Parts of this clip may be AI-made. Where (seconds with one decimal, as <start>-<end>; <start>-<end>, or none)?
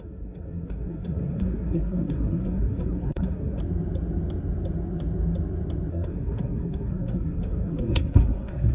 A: 0.0-3.6; 5.9-8.7